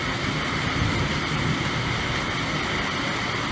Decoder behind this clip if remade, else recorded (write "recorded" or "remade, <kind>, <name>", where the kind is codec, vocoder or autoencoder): recorded